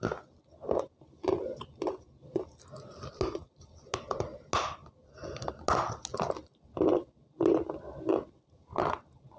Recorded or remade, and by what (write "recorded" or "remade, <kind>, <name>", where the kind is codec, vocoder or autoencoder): recorded